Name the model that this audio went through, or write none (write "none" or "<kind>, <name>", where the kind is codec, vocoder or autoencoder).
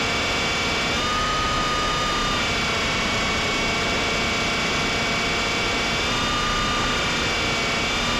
none